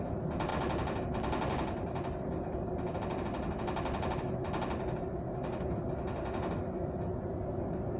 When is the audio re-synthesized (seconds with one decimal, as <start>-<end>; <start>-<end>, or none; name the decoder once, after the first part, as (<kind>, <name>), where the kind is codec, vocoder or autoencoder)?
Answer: none

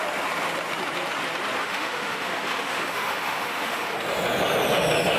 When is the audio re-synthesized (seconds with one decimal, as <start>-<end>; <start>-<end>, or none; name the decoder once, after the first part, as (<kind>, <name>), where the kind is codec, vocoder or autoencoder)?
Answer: 1.6-3.9 (autoencoder, DAC-VAE)

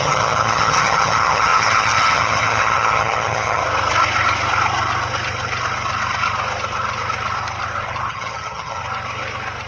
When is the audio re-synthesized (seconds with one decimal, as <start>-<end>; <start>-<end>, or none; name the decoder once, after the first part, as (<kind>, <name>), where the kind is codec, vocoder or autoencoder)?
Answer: 0.0-3.6 (vocoder, HiFi-GAN); 8.1-8.8

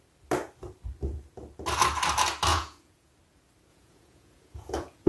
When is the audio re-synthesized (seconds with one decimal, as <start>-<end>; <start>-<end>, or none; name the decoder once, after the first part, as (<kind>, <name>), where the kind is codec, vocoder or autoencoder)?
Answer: 2.5-3.1 (vocoder, Vocos); 3.7-5.1

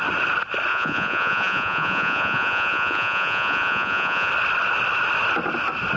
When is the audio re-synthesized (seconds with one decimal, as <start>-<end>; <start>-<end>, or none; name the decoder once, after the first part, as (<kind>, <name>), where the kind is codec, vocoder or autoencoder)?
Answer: 0.7-4.3 (vocoder, Vocos)

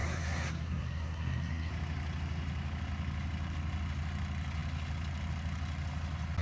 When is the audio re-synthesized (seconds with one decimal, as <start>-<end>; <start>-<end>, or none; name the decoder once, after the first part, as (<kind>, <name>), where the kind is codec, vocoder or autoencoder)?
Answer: 0.0-1.7 (codec, SNAC)

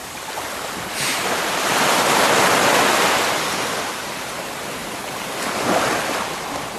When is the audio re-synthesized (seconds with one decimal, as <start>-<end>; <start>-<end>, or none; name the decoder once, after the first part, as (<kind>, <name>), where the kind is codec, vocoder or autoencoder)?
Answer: none